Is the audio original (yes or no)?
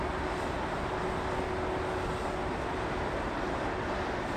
yes